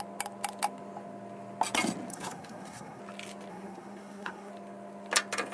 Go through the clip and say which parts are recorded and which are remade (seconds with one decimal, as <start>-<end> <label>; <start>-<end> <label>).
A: 0.0-2.1 recorded; 2.1-3.0 remade; 3.0-3.5 recorded; 3.5-4.5 remade; 4.5-5.5 recorded